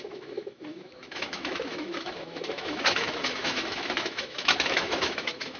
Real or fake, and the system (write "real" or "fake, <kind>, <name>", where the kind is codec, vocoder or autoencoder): fake, autoencoder, DAC-VAE